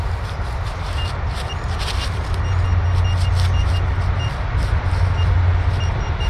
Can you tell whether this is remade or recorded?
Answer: recorded